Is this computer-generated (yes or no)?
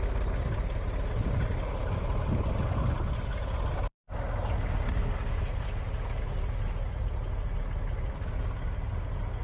no